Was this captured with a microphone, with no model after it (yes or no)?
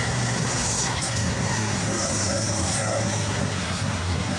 no